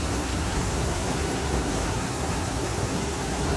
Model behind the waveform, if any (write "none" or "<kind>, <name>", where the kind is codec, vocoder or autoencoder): codec, SNAC